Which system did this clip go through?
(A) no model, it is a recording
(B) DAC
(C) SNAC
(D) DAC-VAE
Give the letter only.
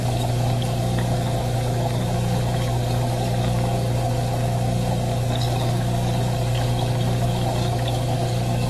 B